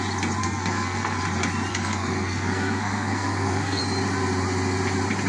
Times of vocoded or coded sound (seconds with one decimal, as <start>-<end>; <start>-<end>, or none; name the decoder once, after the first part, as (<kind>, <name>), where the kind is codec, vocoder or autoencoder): 0.4-1.2 (codec, SNAC); 1.7-3.8

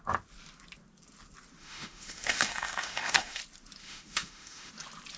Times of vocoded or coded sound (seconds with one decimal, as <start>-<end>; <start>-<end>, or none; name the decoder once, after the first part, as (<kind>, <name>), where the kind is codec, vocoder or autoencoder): 1.6-3.4 (autoencoder, DAC-VAE); 3.8-4.7

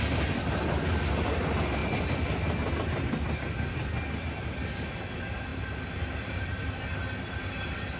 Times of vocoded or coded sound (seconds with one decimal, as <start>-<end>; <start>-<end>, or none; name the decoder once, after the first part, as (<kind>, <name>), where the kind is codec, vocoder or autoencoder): 5.5-6.5 (vocoder, BigVGAN v2)

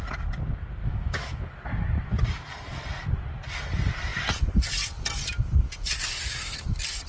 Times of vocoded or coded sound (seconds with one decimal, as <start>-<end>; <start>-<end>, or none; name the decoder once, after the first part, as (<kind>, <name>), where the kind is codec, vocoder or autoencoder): 0.8-1.5 (autoencoder, DAC-VAE)

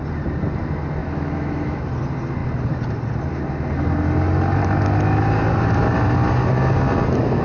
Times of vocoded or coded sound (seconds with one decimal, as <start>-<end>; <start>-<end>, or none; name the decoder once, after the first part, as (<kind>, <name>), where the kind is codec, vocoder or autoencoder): 1.0-1.9 (autoencoder, DAC-VAE)

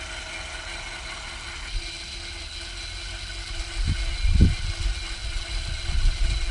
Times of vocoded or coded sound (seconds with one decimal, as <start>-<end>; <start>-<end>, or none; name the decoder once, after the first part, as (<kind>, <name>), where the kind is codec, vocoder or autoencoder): none

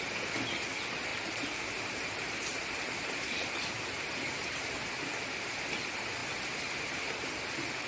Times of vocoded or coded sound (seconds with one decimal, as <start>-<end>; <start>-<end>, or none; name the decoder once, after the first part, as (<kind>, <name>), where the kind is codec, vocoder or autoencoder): 1.1-3.5 (vocoder, BigVGAN v2)